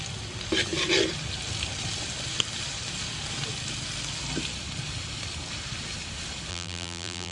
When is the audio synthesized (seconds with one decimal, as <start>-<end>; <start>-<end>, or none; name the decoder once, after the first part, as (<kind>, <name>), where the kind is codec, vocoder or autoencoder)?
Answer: 6.5-7.3 (vocoder, BigVGAN v2)